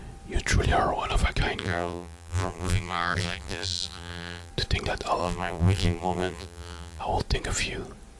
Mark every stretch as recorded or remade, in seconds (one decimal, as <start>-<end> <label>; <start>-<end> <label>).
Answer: 0.0-1.6 recorded; 1.6-4.5 remade; 4.5-5.2 recorded; 5.2-7.0 remade; 7.0-8.2 recorded